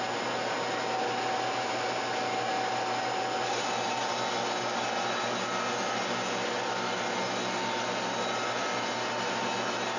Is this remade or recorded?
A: recorded